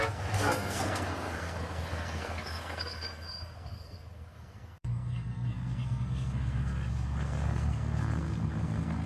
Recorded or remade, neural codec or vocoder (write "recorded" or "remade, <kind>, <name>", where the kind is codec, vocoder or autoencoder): remade, codec, SNAC